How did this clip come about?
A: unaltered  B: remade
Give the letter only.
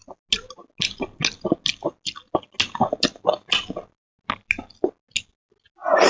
A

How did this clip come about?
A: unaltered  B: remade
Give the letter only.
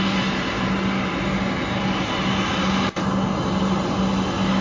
A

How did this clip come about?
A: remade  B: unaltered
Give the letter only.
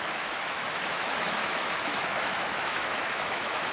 A